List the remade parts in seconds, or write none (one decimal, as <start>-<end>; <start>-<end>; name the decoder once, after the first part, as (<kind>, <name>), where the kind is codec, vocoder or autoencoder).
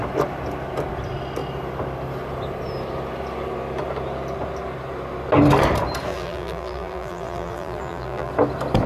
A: 6.1-8.3 (vocoder, BigVGAN v2)